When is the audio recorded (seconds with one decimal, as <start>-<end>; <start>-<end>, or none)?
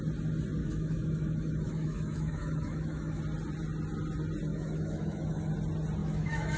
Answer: 0.0-0.6; 3.2-4.5; 5.5-6.0